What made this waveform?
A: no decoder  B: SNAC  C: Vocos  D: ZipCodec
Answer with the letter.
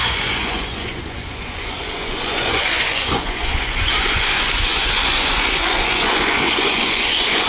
C